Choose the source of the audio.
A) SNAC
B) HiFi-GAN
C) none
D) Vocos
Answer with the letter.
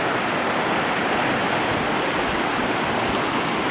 C